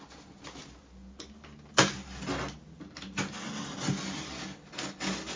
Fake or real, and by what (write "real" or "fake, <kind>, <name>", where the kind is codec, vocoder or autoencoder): real